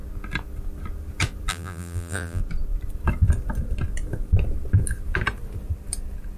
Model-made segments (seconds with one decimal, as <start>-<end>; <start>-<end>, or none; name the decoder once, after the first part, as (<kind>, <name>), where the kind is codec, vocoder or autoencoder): 1.5-2.4 (vocoder, BigVGAN v2)